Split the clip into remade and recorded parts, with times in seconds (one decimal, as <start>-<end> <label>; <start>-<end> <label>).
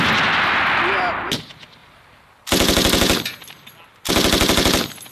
0.0-5.1 recorded